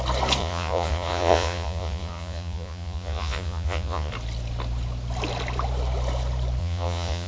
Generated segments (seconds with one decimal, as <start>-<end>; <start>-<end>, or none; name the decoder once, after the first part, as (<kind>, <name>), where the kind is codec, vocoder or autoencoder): 0.4-4.1 (vocoder, Vocos); 6.6-7.3